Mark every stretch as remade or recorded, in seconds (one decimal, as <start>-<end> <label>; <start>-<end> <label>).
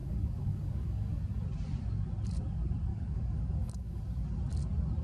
0.0-1.2 remade; 1.2-2.9 recorded; 2.9-4.0 remade; 4.0-5.0 recorded